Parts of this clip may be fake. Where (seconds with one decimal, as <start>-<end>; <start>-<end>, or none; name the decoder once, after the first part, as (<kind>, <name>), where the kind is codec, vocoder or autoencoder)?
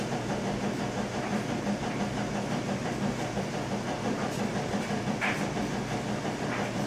1.3-5.4 (vocoder, BigVGAN v2)